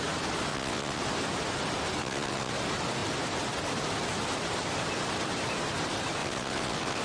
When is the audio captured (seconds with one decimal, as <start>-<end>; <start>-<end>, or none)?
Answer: 0.0-0.5; 1.0-2.0; 2.5-6.2